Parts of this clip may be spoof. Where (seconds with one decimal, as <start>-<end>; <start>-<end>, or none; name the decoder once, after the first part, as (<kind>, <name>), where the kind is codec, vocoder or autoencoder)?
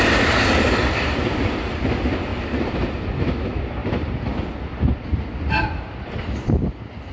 0.0-2.3 (vocoder, BigVGAN v2); 3.4-7.1